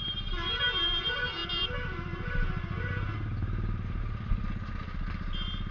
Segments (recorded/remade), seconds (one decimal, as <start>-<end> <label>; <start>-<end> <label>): 0.0-5.7 recorded